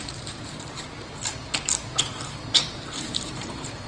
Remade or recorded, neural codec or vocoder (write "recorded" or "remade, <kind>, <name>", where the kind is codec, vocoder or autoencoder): remade, vocoder, BigVGAN v2